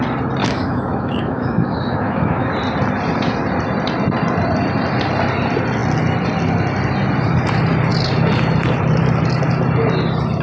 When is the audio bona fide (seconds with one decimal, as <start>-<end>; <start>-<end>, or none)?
0.0-0.4; 2.5-10.4

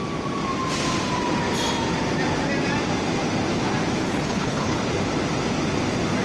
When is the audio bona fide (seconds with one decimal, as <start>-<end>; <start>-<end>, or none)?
0.0-4.0; 4.8-6.2

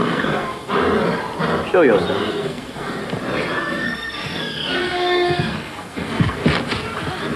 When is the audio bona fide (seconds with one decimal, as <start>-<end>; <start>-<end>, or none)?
0.7-2.3; 3.0-3.6; 6.4-7.4

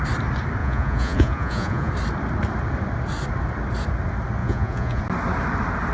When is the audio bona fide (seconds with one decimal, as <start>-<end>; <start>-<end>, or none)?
0.0-0.6; 1.9-4.4; 5.0-5.9

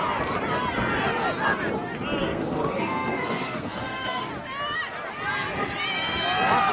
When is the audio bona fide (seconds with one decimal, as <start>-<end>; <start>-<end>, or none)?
0.0-2.2; 4.3-6.7

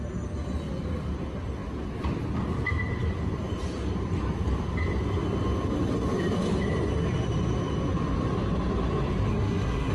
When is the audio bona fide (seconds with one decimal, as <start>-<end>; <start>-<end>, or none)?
0.0-9.3

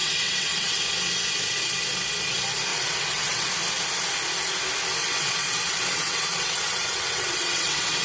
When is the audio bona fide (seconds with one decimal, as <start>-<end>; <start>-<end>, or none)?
0.8-2.7; 3.5-5.0